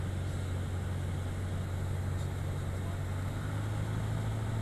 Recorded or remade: recorded